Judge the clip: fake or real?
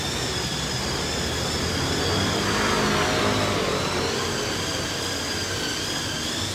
real